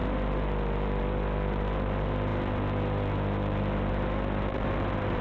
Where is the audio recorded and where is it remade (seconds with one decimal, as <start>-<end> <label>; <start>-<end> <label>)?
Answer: 0.0-5.2 recorded